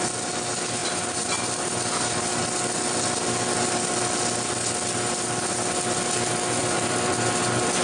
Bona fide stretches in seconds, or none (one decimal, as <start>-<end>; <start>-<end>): 0.0-0.8; 2.4-6.6; 7.1-7.8